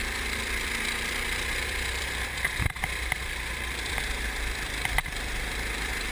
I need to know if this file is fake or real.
fake